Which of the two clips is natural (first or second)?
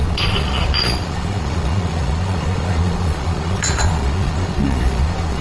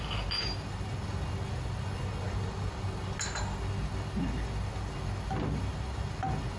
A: second